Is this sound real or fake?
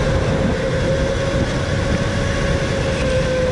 real